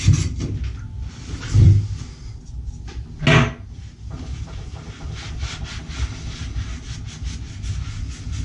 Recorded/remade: recorded